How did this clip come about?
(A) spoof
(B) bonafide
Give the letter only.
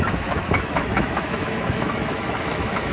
A